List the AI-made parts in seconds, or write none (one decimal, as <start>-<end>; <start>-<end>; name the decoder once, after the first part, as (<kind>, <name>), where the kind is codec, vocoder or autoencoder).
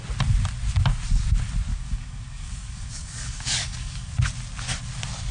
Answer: 1.7-4.1 (codec, DAC)